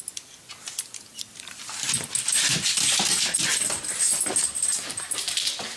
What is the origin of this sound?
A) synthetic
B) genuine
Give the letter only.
A